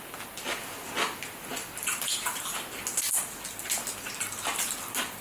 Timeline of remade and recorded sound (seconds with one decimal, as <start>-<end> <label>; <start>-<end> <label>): 0.0-1.5 recorded; 1.5-2.7 remade; 2.7-5.2 recorded